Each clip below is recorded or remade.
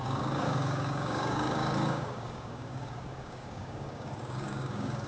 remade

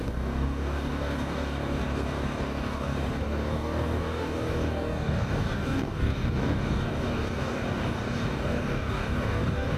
remade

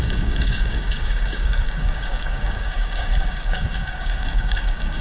remade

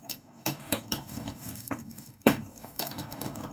remade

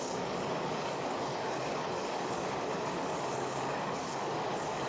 remade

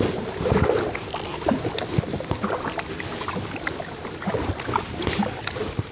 recorded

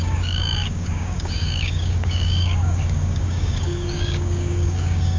remade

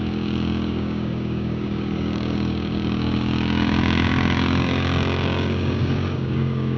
remade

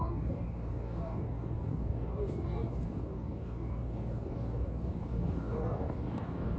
remade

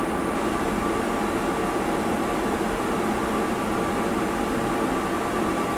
recorded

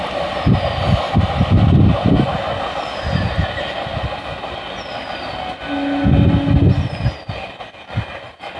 recorded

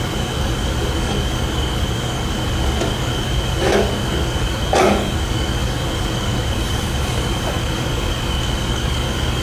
remade